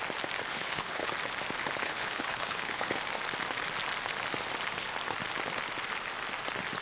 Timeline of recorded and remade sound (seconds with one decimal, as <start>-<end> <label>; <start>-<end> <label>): 0.0-0.5 recorded; 0.5-1.1 remade; 1.1-1.8 recorded; 1.8-3.0 remade; 3.0-6.8 recorded